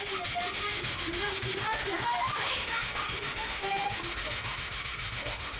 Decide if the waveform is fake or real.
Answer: fake